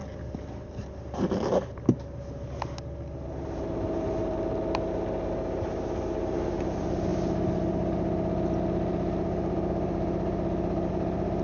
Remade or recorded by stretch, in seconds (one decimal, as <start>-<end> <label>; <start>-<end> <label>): 0.0-11.4 recorded